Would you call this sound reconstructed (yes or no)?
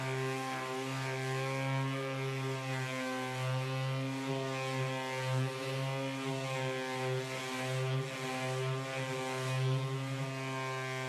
no